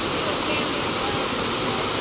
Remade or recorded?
recorded